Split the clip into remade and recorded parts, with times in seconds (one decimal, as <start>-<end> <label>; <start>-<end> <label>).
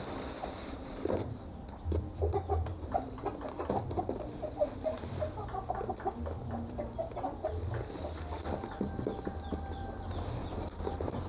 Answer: 0.0-0.6 recorded; 0.6-1.4 remade; 1.4-2.7 recorded; 2.7-3.2 remade; 3.2-3.8 recorded; 3.8-5.8 remade; 5.8-10.4 recorded; 10.4-11.3 remade